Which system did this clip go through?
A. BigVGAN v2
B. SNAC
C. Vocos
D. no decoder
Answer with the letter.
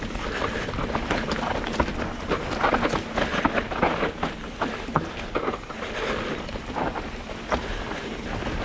D